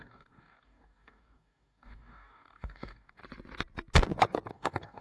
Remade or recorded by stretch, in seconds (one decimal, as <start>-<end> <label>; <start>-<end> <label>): 0.0-3.2 remade; 3.2-4.5 recorded; 4.5-5.0 remade